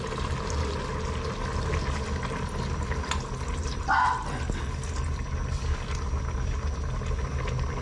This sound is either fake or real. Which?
real